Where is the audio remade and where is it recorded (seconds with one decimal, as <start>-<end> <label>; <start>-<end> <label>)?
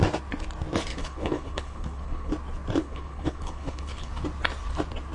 0.0-0.9 recorded; 0.9-2.3 remade; 2.3-2.8 recorded; 2.8-4.1 remade; 4.1-5.1 recorded